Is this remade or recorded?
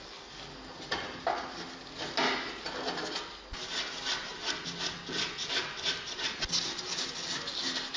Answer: recorded